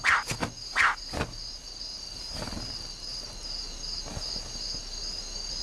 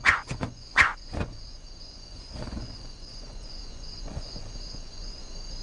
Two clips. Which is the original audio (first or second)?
first